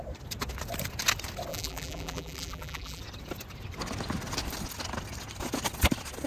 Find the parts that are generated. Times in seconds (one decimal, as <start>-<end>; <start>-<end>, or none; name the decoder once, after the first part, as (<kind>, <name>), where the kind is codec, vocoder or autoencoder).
1.5-3.0 (vocoder, BigVGAN v2)